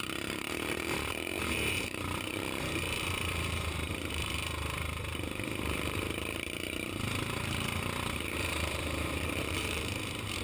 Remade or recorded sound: remade